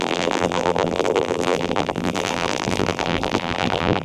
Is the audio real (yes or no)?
no